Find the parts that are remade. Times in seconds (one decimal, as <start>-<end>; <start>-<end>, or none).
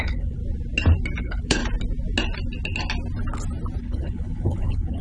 0.0-0.4; 1.2-1.6; 3.8-5.0